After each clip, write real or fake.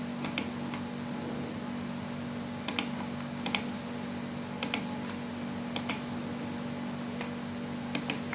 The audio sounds real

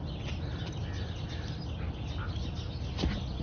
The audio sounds real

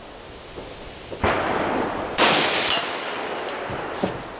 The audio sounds real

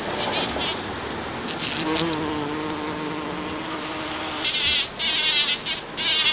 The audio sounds real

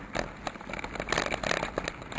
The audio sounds real